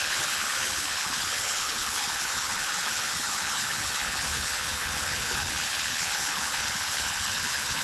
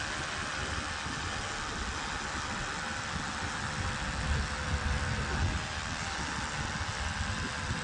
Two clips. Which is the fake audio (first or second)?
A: first